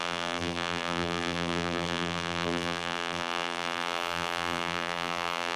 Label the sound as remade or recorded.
remade